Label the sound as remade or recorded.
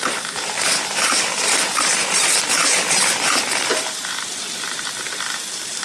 remade